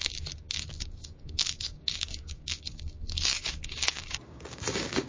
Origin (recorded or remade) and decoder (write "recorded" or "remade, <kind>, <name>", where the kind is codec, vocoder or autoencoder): remade, codec, DAC